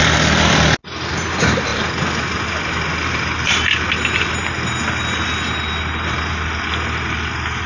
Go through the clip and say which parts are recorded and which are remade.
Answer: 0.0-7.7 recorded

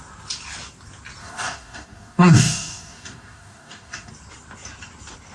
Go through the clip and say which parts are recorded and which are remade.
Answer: 0.0-1.2 recorded; 1.2-4.1 remade; 4.1-5.3 recorded

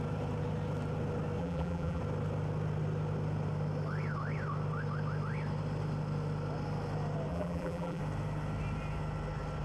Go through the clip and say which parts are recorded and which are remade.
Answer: 0.0-1.4 recorded; 1.4-2.0 remade; 2.0-7.3 recorded; 7.3-8.0 remade; 8.0-9.6 recorded

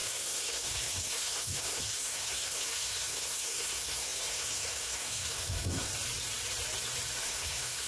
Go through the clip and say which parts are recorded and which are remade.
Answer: 0.0-5.9 remade; 5.9-7.2 recorded; 7.2-7.9 remade

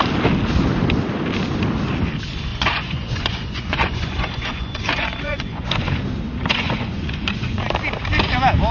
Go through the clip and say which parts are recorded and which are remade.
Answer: 0.0-2.5 recorded; 2.5-6.0 remade; 6.0-6.4 recorded; 6.4-7.6 remade; 7.6-8.7 recorded

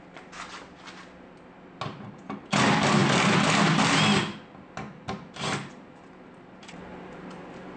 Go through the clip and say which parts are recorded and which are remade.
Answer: 0.0-7.8 recorded

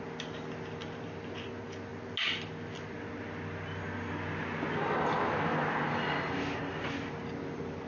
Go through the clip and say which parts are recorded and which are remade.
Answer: 0.0-7.9 recorded

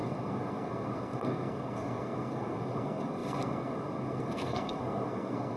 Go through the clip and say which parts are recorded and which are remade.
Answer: 0.0-5.6 remade